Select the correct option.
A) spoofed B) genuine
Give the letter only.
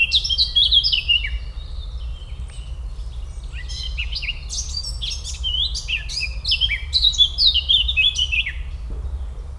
B